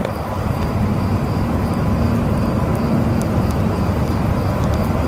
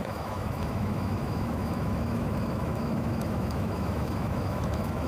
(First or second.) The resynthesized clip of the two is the second